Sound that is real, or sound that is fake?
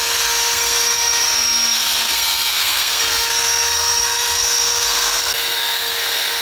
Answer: fake